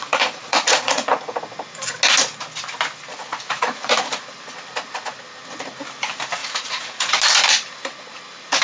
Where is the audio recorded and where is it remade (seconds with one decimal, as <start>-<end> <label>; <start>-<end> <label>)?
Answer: 0.0-1.4 remade; 1.4-3.3 recorded; 3.3-4.2 remade; 4.2-6.4 recorded; 6.4-7.2 remade; 7.2-8.6 recorded